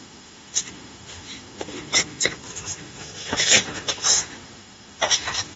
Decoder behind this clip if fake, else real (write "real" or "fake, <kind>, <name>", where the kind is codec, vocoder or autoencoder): fake, autoencoder, DAC-VAE